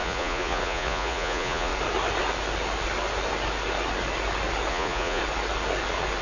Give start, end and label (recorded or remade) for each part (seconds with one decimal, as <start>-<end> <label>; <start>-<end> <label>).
0.0-1.7 remade; 1.7-4.7 recorded; 4.7-5.2 remade; 5.2-6.2 recorded